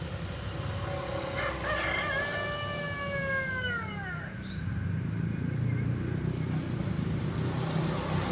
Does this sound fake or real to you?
real